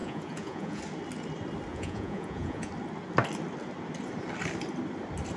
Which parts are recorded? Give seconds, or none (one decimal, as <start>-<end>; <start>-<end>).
0.8-1.7; 2.7-5.4